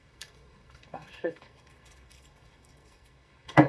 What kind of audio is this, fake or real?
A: fake